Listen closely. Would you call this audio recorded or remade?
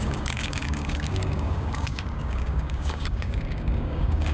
remade